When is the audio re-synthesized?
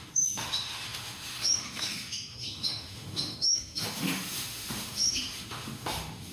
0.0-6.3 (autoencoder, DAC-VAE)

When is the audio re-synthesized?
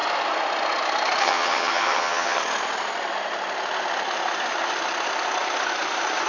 1.2-2.4 (vocoder, HiFi-GAN)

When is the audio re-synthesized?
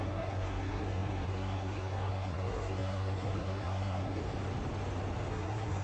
0.0-4.2 (codec, SNAC); 5.3-5.8